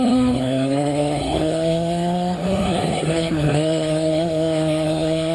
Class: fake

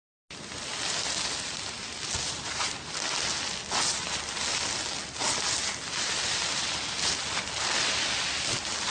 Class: real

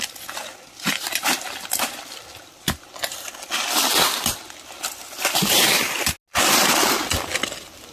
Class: real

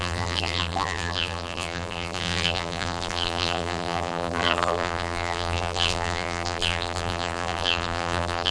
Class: fake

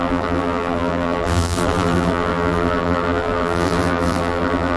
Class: fake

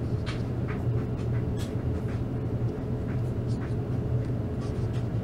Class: real